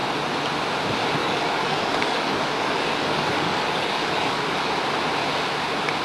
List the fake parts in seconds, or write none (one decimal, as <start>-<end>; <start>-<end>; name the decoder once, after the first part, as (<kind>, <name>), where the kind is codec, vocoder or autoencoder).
1.2-4.7 (codec, DAC)